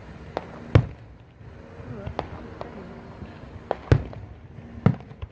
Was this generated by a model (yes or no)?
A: no